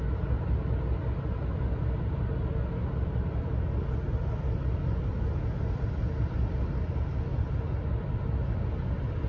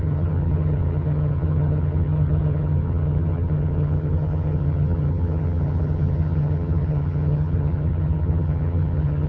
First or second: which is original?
first